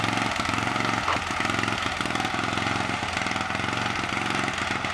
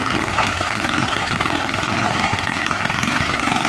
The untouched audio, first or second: first